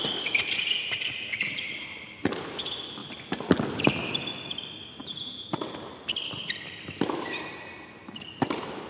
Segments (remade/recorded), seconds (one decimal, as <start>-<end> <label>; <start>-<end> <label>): 0.0-5.0 recorded; 5.0-5.5 remade; 5.5-8.9 recorded